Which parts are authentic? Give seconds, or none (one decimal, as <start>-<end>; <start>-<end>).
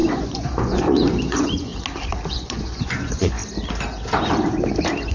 1.7-2.3; 3.4-5.1